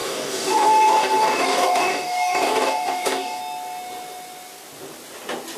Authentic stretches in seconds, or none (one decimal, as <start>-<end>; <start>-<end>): 3.4-5.6